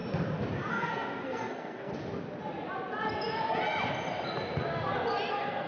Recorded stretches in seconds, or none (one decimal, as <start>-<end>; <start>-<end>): 0.0-0.7; 1.9-5.3